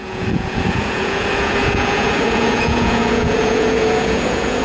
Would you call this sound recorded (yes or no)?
no